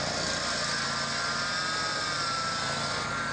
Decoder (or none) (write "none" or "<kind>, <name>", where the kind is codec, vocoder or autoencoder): none